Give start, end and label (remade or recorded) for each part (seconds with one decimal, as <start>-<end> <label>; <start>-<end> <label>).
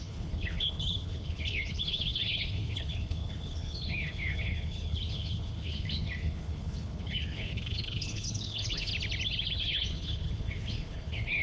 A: 0.0-8.9 remade; 8.9-9.6 recorded; 9.6-11.4 remade